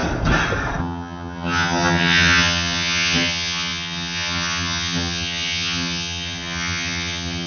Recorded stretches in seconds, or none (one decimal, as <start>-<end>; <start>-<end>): 0.0-0.8